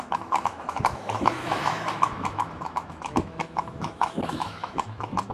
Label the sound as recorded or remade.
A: remade